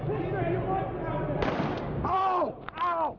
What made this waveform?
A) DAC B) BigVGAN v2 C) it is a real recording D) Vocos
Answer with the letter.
C